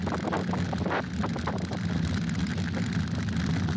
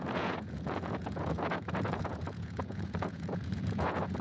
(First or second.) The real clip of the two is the first